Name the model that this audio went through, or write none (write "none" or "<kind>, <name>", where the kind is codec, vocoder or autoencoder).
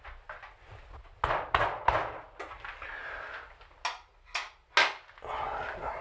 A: none